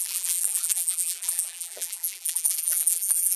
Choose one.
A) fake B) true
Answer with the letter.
A